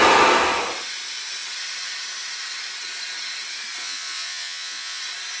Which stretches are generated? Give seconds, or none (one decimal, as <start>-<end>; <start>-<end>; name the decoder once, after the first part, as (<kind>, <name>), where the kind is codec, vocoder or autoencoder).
3.8-5.0 (vocoder, Vocos)